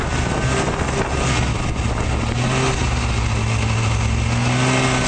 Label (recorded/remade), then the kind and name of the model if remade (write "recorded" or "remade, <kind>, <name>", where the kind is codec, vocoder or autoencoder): recorded